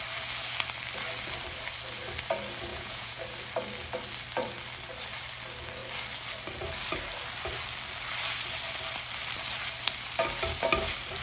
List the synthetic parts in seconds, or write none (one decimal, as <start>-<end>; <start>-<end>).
2.7-3.2